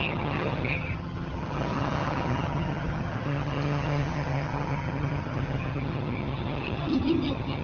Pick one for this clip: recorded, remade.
remade